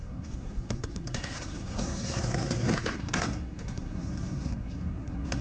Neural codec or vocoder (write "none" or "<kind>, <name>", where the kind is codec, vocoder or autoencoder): codec, SNAC